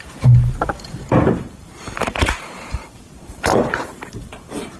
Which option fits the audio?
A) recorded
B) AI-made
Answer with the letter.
B